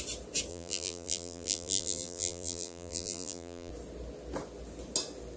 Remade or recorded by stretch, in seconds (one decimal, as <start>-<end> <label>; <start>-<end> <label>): 0.0-0.5 recorded; 0.5-3.7 remade; 3.7-5.4 recorded